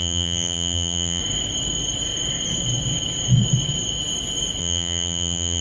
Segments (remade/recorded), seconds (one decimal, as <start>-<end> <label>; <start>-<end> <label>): 0.0-1.2 remade; 1.2-4.6 recorded; 4.6-5.6 remade